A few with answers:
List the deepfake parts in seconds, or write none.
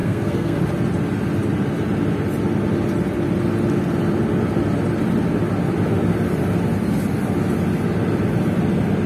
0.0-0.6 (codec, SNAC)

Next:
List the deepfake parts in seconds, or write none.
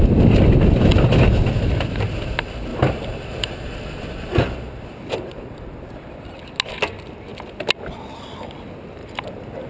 2.7-6.3 (vocoder, BigVGAN v2); 9.0-9.7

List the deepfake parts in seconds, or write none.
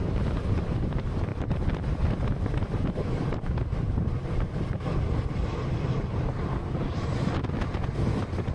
none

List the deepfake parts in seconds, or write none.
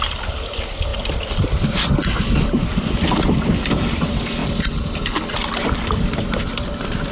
none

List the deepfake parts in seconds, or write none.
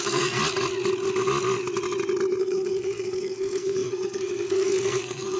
0.0-0.4 (codec, SNAC); 2.4-5.4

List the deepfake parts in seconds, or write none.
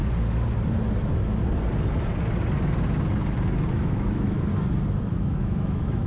3.7-4.5 (autoencoder, DAC-VAE); 5.0-6.1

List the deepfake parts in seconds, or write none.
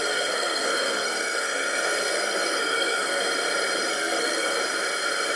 0.0-3.2 (codec, SNAC); 3.9-4.6